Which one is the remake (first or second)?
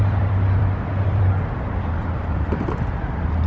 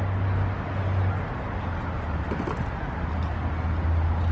first